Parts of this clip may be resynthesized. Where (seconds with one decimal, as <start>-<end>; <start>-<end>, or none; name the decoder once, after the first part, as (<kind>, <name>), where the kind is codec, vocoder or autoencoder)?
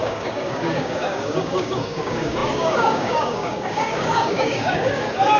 0.0-5.4 (codec, DAC)